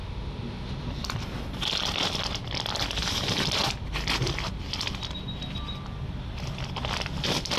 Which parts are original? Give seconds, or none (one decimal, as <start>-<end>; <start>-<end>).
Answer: 0.9-7.6